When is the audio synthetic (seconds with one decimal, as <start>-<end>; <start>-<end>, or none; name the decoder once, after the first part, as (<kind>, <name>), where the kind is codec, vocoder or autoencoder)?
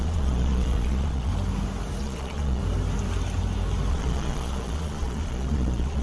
0.0-1.3 (vocoder, Vocos); 2.0-2.6; 3.9-6.0